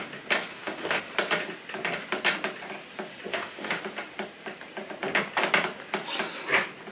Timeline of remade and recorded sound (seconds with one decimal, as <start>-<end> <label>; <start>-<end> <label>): 0.0-0.5 recorded; 0.5-1.0 remade; 1.0-3.3 recorded; 3.3-3.8 remade; 3.8-6.9 recorded